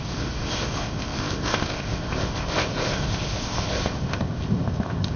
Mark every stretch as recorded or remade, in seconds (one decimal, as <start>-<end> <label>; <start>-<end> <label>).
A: 0.0-5.2 remade